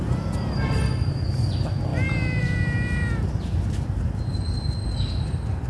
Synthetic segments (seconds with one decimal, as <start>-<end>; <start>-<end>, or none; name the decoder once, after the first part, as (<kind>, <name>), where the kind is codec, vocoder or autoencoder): none